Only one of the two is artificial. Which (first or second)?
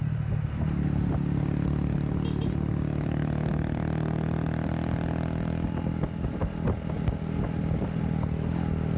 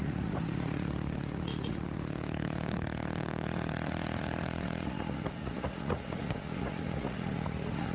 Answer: second